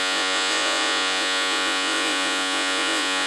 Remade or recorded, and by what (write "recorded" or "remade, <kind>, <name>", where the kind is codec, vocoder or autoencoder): remade, vocoder, Vocos